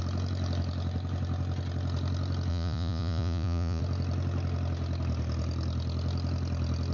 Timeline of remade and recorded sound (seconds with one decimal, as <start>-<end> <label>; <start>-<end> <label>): 0.0-2.5 recorded; 2.5-3.8 remade; 3.8-6.9 recorded